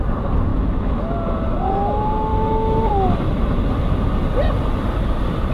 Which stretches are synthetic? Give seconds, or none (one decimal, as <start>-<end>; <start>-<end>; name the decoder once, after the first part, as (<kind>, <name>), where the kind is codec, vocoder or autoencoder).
0.5-1.0 (autoencoder, DAC-VAE); 2.3-2.9